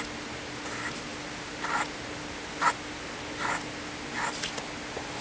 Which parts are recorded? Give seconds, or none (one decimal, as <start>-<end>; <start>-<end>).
0.0-5.2